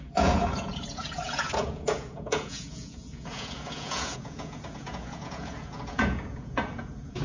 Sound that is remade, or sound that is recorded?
remade